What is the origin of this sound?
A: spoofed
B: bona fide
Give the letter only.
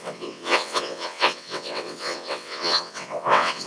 A